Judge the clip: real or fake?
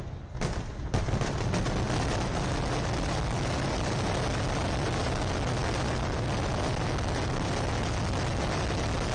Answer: real